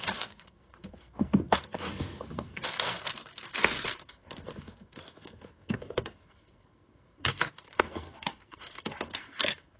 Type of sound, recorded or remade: remade